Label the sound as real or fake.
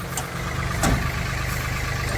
real